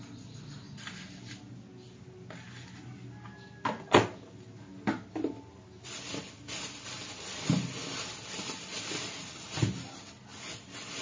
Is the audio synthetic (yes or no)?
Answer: no